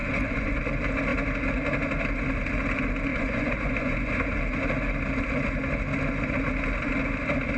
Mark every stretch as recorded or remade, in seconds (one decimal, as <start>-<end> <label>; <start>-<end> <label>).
0.0-0.6 remade; 0.6-3.1 recorded; 3.1-4.1 remade; 4.1-7.6 recorded